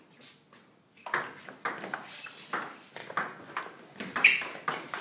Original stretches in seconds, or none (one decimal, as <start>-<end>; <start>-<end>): 0.0-3.0; 3.6-5.0